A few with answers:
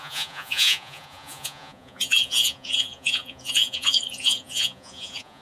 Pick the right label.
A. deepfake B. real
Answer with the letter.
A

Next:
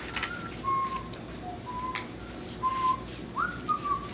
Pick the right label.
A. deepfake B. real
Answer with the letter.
B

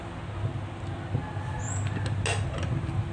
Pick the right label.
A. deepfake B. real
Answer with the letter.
B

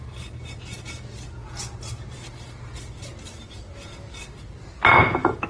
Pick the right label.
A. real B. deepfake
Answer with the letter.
A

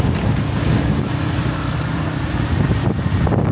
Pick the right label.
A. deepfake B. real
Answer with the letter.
B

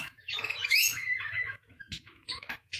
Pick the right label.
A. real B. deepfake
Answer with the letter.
B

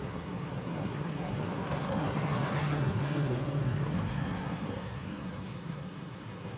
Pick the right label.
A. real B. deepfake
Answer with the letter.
B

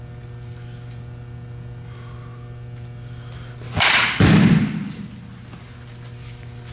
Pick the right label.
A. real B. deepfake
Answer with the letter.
A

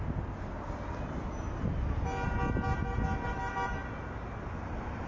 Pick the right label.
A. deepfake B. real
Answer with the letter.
B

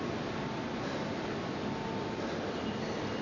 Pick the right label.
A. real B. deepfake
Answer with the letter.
A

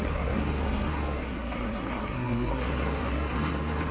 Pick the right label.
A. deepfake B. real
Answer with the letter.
A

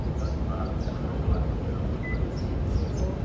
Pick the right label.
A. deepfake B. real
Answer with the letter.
B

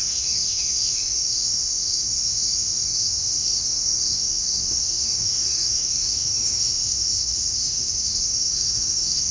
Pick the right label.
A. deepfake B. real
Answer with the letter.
A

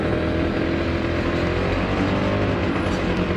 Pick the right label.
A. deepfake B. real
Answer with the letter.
B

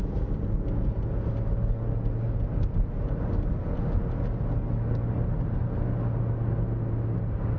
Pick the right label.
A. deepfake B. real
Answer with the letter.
B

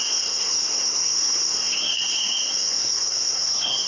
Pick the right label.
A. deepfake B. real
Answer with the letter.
A